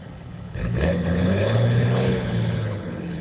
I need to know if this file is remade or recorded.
remade